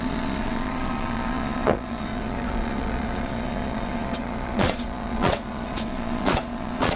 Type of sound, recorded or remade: remade